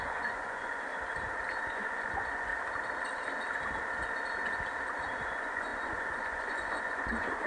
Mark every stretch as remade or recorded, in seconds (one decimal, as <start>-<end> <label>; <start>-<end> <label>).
0.0-0.9 remade; 0.9-1.7 recorded; 1.7-2.5 remade; 2.5-5.2 recorded; 5.2-7.5 remade